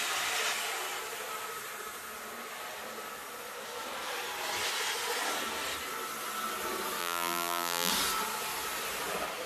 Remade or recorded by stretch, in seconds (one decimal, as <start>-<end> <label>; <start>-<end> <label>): 0.0-7.0 recorded; 7.0-7.9 remade; 7.9-9.5 recorded